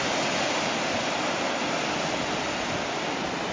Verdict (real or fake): real